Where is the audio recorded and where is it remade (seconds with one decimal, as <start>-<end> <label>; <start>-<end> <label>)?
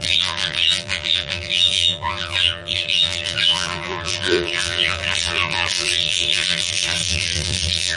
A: 0.0-8.0 remade